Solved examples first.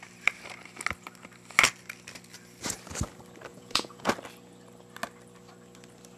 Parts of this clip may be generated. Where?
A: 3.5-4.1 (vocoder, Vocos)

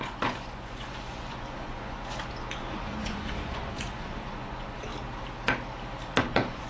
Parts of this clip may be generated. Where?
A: 0.0-4.9 (vocoder, Vocos); 6.2-6.7

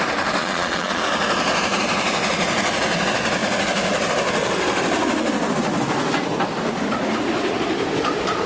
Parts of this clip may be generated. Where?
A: 0.4-1.0 (vocoder, Vocos)

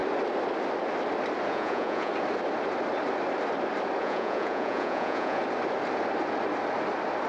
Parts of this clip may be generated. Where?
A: 1.5-2.1 (vocoder, Vocos); 4.0-5.4

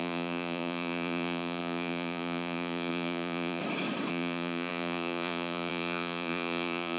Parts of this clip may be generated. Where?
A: 0.0-3.6 (vocoder, Vocos); 4.1-7.0

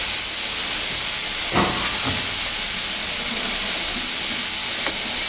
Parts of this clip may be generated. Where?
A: none